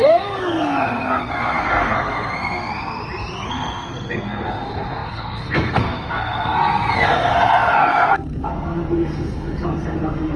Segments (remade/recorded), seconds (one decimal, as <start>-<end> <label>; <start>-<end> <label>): 0.0-3.0 remade; 3.0-3.5 recorded; 3.5-10.4 remade